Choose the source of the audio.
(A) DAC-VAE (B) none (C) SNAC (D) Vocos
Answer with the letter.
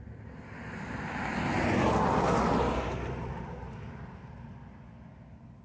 B